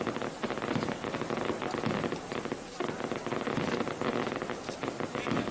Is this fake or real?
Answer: real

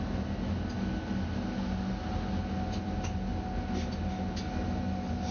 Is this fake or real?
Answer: real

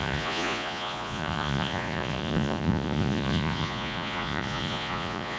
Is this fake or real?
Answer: fake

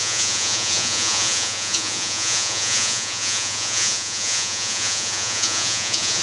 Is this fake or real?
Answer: fake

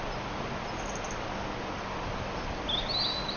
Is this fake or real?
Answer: real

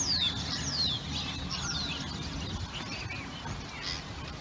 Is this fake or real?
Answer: real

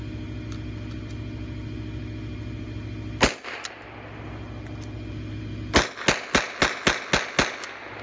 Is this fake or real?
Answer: real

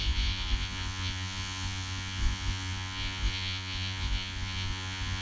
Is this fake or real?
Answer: fake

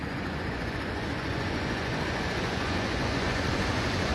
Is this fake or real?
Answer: fake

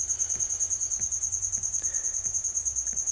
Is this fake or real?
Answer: fake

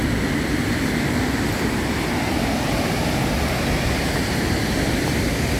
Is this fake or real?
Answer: real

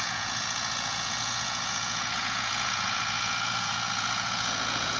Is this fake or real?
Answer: fake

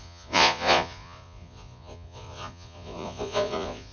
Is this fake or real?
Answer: fake